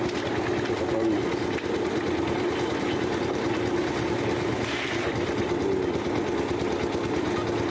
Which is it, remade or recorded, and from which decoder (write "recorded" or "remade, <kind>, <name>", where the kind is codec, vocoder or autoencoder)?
recorded